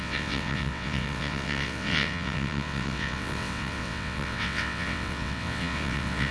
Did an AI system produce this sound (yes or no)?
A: yes